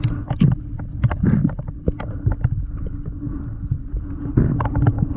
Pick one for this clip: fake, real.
real